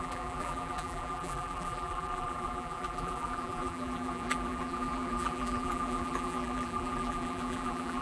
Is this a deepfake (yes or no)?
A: yes